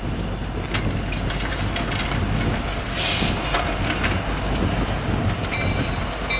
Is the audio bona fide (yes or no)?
yes